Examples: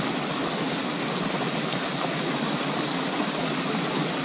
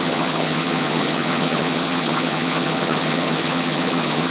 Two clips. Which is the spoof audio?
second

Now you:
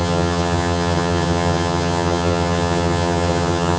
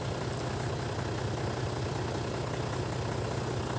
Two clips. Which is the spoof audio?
first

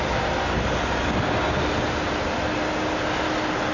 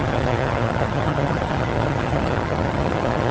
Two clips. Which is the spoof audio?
second